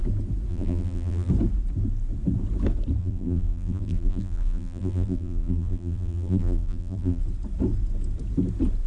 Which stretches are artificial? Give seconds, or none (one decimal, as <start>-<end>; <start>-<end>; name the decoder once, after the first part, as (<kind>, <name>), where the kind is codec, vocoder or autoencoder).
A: 0.5-1.3 (vocoder, BigVGAN v2); 3.0-7.2